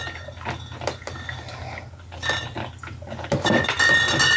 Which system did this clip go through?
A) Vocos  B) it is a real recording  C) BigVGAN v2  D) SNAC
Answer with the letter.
B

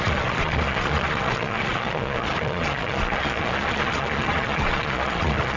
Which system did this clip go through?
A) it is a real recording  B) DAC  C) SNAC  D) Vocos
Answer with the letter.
D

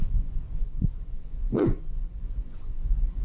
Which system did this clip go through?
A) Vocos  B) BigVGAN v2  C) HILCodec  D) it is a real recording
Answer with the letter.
A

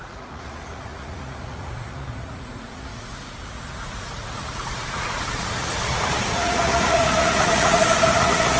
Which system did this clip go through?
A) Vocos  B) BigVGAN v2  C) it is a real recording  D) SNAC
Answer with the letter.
A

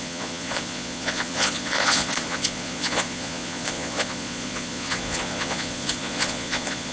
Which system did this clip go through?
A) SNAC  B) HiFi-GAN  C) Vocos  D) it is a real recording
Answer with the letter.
C